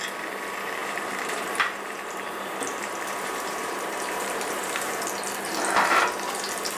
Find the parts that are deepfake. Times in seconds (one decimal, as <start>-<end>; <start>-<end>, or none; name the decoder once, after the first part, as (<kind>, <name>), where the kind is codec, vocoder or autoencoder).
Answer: 0.8-4.9 (vocoder, BigVGAN v2)